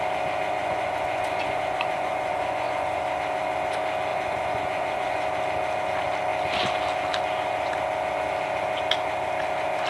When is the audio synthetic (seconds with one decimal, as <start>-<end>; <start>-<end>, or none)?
0.6-3.0; 4.1-5.2